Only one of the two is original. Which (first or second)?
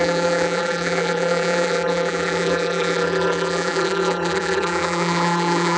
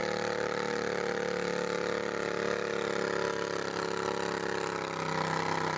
second